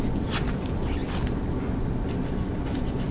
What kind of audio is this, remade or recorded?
recorded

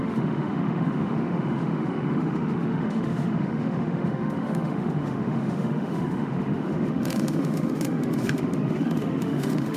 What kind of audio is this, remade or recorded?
remade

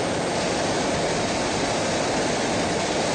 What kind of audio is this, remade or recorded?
recorded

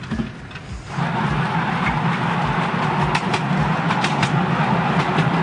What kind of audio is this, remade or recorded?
recorded